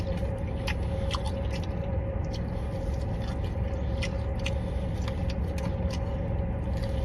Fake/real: real